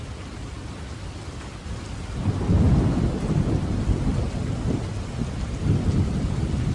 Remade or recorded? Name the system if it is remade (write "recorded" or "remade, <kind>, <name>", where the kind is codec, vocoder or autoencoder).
recorded